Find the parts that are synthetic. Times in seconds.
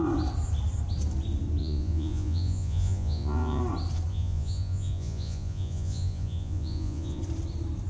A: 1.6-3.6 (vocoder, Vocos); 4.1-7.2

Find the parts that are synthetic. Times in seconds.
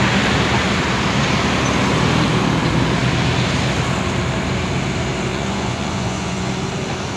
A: 5.3-6.5 (vocoder, Vocos)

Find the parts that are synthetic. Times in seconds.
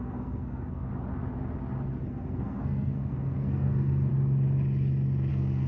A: 0.0-0.9 (codec, SNAC); 2.0-4.1; 5.3-5.7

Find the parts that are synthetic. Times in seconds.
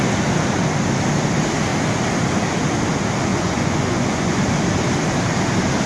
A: 3.3-4.4 (vocoder, Vocos)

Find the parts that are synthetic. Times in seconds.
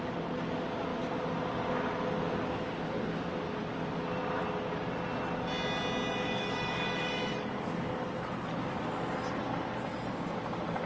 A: 6.1-8.5 (codec, DAC)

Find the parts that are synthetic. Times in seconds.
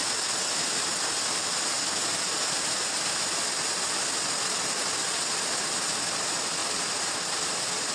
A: 6.6-7.9 (vocoder, BigVGAN v2)